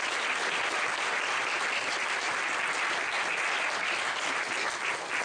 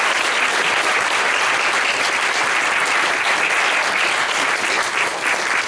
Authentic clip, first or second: first